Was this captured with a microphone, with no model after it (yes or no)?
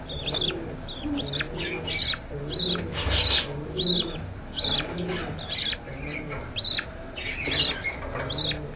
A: yes